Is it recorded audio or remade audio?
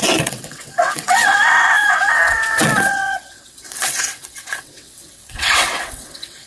remade